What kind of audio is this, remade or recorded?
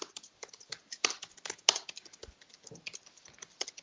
recorded